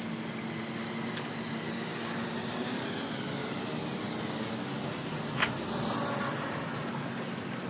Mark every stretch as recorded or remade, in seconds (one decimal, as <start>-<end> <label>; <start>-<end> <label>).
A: 0.0-7.7 recorded